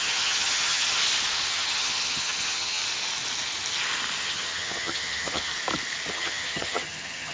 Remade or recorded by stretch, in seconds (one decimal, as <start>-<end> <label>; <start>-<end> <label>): 0.0-1.0 remade; 1.0-1.5 recorded; 1.5-2.8 remade; 2.8-4.2 recorded; 4.2-5.5 remade; 5.5-6.1 recorded; 6.1-7.3 remade